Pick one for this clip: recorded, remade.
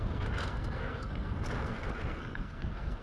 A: remade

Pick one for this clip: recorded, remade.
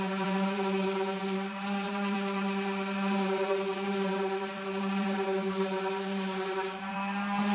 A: remade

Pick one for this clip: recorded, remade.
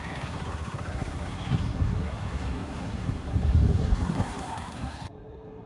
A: remade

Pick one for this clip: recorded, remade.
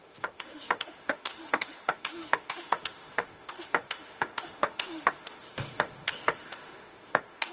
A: remade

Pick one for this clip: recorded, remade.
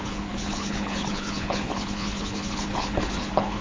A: remade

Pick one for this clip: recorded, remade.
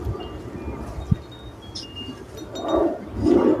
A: recorded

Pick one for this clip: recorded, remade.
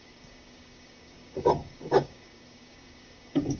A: remade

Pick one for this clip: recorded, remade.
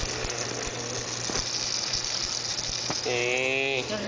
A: recorded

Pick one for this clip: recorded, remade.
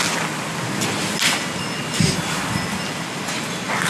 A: recorded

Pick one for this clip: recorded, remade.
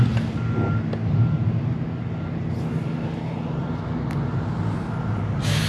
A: recorded